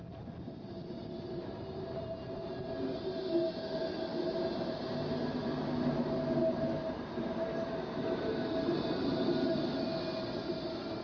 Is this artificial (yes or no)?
no